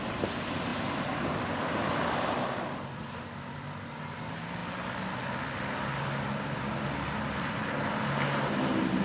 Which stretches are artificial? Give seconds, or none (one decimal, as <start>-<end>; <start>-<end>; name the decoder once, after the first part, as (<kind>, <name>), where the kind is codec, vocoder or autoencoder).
none